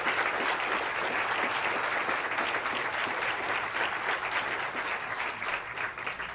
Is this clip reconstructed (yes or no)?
no